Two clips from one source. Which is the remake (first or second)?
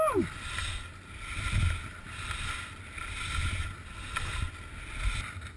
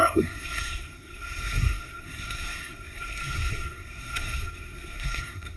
second